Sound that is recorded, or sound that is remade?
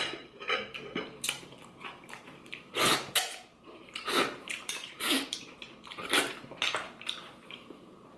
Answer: remade